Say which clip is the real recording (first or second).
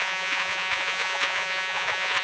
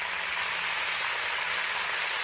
second